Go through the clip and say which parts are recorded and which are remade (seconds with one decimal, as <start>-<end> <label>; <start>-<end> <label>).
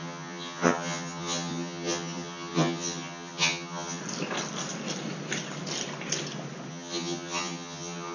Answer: 0.0-4.0 remade; 4.0-6.7 recorded; 6.7-8.1 remade